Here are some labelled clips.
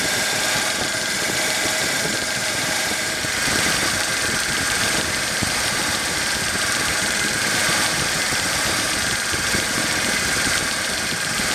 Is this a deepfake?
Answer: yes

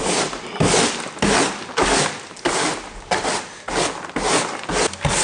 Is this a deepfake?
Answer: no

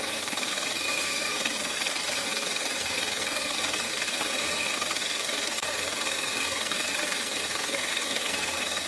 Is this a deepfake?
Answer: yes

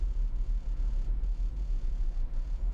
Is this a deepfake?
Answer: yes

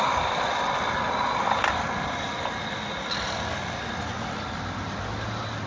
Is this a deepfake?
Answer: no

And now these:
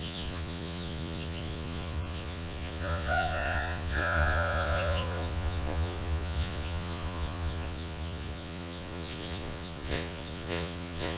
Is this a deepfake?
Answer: yes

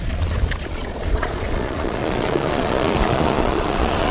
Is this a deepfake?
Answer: yes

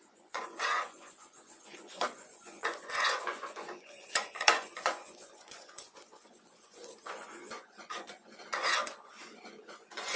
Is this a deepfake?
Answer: yes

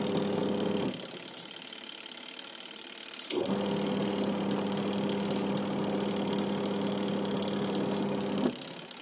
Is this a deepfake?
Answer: no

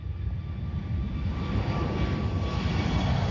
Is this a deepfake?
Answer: no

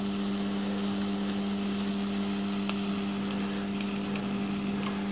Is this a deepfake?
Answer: no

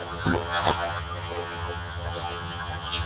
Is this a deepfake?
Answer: yes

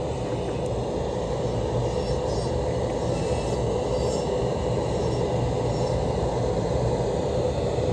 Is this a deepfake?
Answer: no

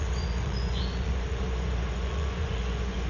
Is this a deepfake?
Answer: yes